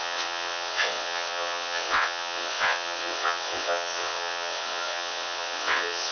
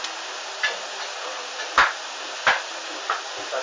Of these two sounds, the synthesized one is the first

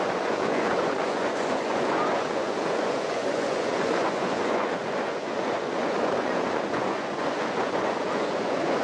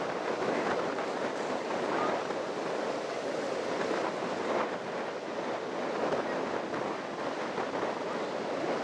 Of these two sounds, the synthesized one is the first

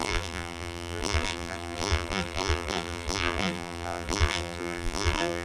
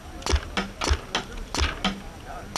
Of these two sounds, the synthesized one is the first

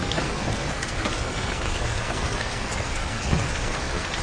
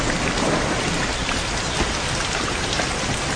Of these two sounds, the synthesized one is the first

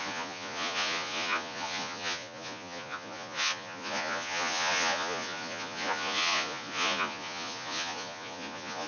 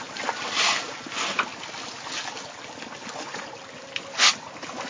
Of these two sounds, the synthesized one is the first